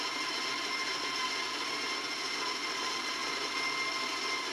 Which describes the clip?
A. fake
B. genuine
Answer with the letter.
B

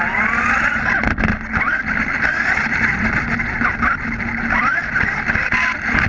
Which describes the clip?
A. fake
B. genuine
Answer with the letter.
B